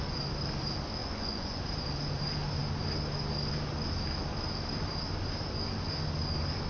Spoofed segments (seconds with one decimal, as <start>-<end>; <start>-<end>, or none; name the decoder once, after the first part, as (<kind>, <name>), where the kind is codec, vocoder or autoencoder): 1.0-1.6 (vocoder, Vocos)